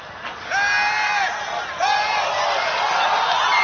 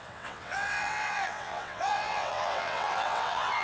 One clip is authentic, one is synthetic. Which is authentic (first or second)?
first